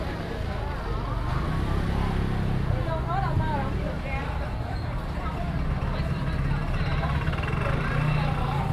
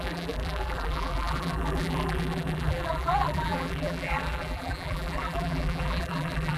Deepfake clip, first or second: second